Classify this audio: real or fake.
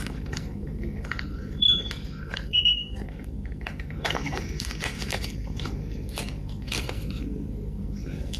fake